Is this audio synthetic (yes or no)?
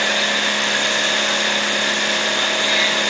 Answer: no